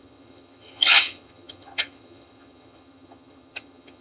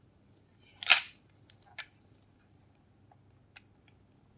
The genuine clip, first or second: second